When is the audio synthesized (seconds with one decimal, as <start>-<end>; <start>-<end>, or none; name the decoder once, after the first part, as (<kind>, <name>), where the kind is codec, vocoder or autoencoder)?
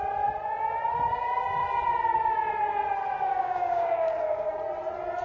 3.4-4.5 (codec, DAC)